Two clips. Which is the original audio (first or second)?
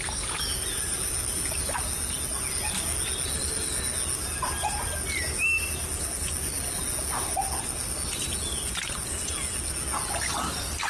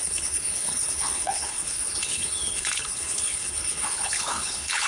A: first